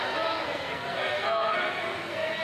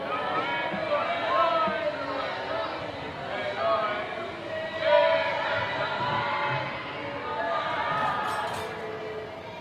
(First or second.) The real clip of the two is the second